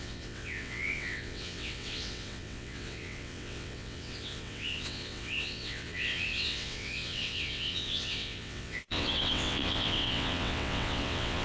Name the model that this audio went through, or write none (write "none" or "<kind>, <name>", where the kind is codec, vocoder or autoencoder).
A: vocoder, WaveNeXt